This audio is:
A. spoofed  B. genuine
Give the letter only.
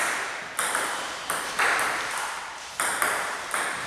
A